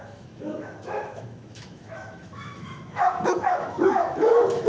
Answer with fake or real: fake